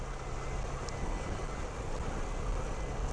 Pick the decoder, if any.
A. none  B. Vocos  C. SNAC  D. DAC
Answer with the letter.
A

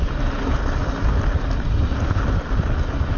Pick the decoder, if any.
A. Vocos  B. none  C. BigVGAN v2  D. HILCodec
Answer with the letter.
B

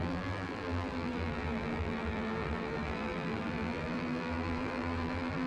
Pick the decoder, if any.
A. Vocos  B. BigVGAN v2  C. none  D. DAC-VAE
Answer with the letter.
B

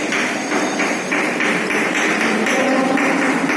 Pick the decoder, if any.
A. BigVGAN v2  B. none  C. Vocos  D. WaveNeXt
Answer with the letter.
A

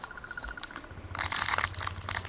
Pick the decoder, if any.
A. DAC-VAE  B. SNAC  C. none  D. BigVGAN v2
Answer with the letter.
C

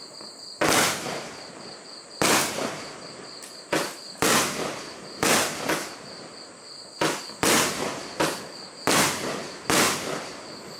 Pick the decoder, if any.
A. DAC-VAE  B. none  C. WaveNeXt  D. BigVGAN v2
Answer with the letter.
B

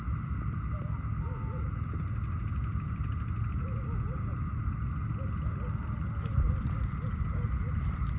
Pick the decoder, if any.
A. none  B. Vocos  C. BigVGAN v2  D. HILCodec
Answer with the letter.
A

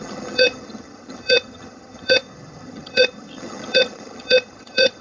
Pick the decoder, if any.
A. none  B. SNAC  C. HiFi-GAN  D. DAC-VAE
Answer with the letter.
C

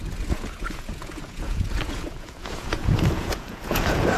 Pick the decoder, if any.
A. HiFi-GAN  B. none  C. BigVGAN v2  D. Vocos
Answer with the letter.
D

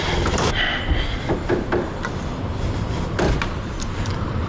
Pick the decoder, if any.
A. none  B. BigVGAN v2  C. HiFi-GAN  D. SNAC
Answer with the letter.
B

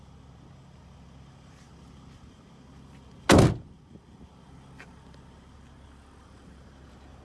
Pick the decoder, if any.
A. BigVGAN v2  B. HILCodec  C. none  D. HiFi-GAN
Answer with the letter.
C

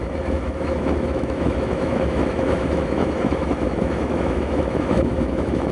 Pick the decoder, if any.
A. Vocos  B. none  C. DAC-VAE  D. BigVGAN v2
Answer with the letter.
C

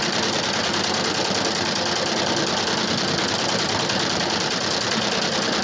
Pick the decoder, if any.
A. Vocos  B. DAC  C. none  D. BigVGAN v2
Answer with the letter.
C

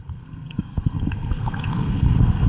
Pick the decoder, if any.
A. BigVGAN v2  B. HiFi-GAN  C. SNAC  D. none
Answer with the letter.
C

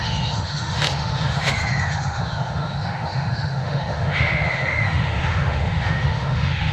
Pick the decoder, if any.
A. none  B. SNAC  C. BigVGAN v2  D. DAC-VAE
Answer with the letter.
D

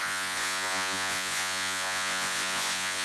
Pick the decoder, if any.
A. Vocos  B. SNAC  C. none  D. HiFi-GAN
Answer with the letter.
A